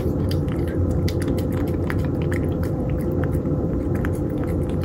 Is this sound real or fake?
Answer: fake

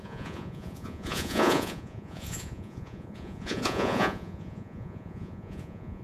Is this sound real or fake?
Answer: fake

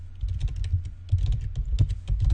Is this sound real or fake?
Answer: real